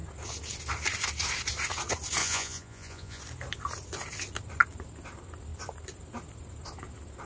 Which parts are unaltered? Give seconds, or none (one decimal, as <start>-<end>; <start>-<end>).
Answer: 0.0-2.2; 3.2-7.3